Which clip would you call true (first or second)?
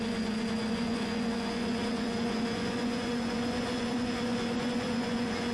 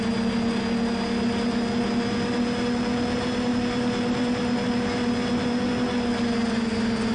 second